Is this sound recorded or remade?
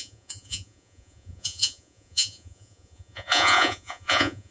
remade